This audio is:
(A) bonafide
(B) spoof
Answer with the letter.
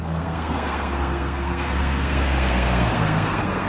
B